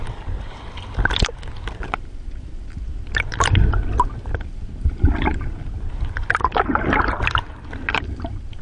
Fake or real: real